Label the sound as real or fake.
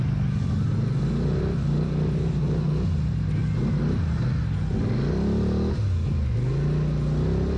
real